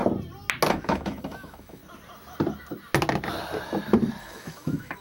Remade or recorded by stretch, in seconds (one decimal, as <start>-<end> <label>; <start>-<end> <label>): 0.0-0.7 recorded; 0.7-1.8 remade; 1.8-4.2 recorded; 4.2-5.0 remade